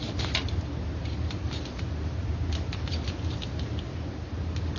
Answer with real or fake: real